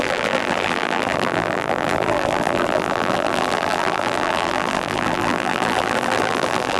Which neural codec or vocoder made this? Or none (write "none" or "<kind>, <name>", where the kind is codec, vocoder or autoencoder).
vocoder, BigVGAN v2